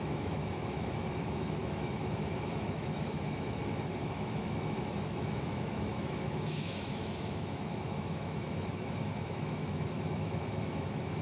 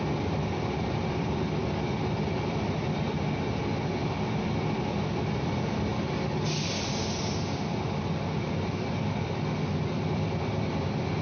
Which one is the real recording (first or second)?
second